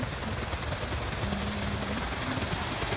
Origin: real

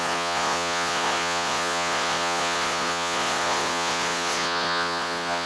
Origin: fake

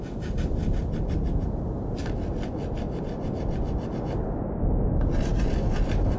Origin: real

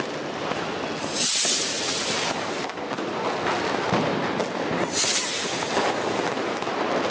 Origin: real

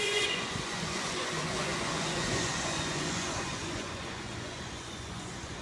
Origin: fake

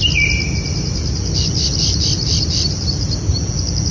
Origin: real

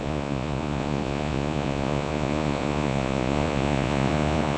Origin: fake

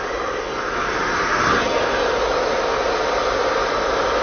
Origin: real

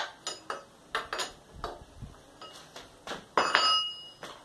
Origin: real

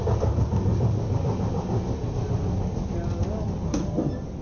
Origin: real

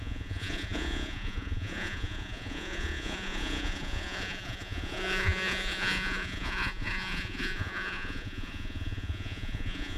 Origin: fake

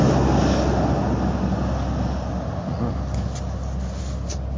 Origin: real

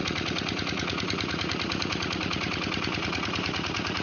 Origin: fake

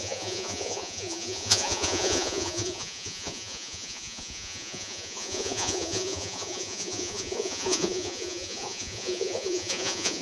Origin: fake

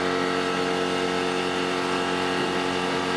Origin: real